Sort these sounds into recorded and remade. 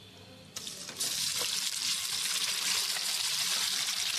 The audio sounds recorded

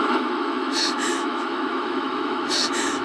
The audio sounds remade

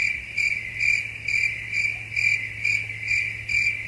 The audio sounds recorded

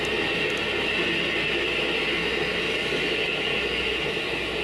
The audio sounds recorded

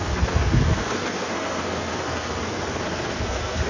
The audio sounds remade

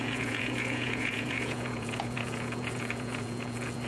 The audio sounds remade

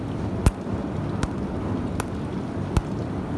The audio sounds recorded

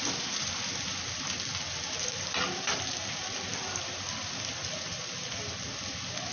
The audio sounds remade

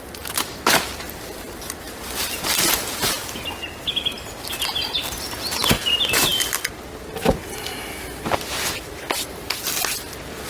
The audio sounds recorded